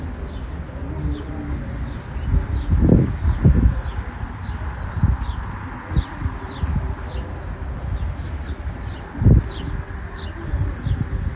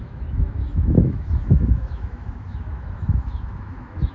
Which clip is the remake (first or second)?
second